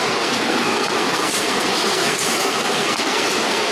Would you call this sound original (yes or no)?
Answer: no